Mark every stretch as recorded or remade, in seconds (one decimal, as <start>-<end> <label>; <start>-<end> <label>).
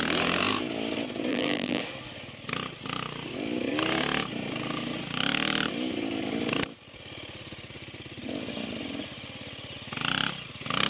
0.0-1.3 recorded; 1.3-1.8 remade; 1.8-10.9 recorded